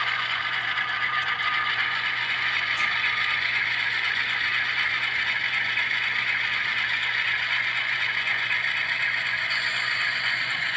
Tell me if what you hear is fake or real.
fake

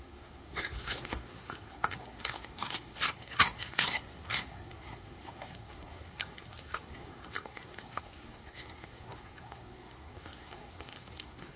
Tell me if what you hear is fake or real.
fake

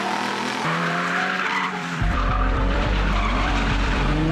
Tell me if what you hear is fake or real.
fake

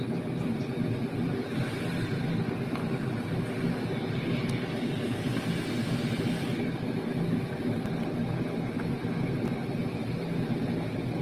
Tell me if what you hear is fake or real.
real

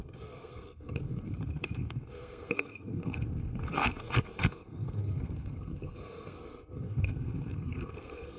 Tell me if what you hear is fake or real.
fake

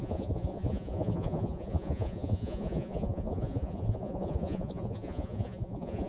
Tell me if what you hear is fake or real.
fake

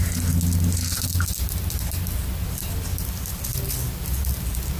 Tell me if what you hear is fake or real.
real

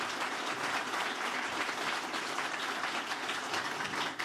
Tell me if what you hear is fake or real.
real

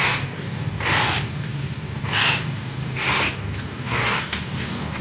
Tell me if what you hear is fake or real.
fake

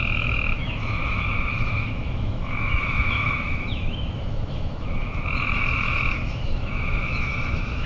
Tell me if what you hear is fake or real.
fake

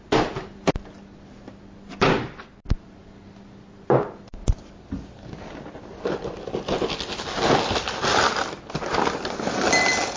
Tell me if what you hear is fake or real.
real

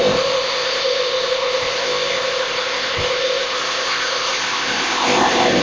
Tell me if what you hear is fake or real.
fake